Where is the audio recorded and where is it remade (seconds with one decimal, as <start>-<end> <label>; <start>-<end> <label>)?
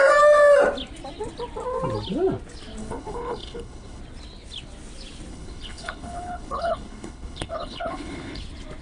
0.0-2.8 recorded; 2.8-4.0 remade; 4.0-5.3 recorded; 5.3-8.4 remade; 8.4-8.8 recorded